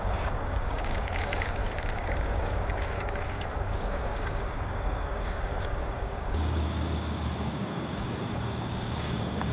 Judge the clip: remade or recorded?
remade